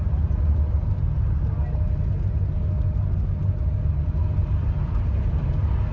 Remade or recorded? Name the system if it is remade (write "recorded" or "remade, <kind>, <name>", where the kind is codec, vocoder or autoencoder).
recorded